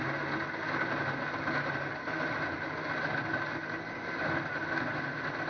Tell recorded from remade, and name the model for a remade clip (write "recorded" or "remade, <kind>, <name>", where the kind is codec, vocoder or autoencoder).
recorded